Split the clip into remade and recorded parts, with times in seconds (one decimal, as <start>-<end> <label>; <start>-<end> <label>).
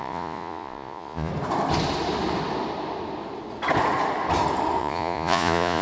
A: 0.0-1.3 remade; 1.3-4.8 recorded; 4.8-5.8 remade